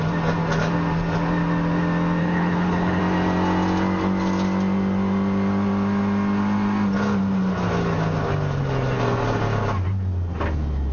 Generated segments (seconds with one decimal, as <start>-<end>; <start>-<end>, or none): 2.2-3.0